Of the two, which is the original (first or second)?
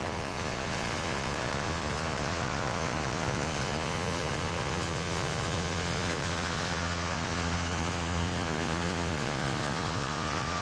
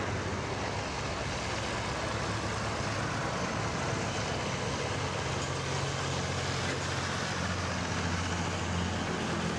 second